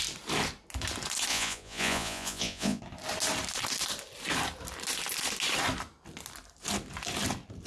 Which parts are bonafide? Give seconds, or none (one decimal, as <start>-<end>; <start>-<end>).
0.0-1.3; 2.8-7.7